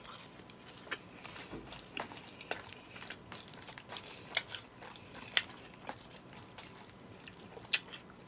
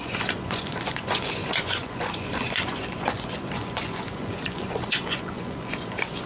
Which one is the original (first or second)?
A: first